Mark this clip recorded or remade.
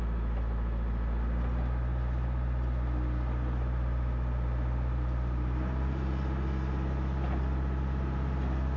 recorded